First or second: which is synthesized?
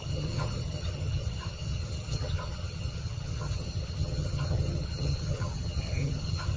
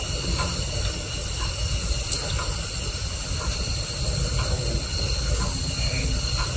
first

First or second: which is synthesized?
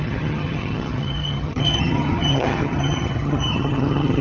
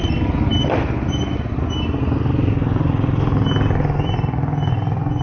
first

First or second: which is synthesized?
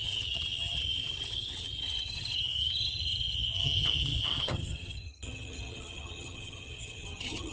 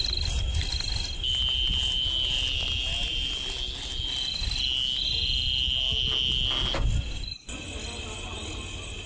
first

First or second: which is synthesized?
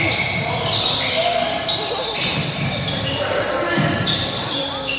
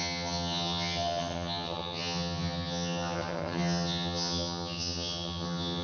second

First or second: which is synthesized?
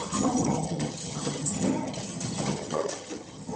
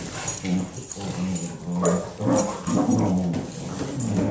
first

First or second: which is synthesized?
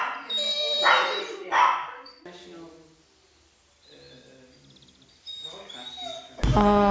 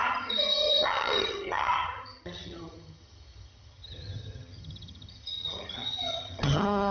second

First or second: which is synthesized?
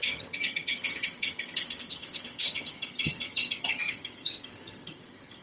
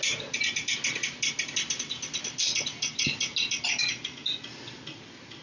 first